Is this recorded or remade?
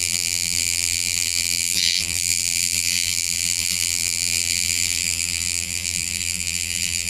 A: remade